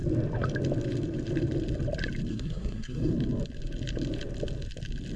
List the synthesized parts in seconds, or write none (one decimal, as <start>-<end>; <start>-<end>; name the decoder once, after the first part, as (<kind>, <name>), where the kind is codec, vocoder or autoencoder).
2.3-3.1 (codec, SNAC)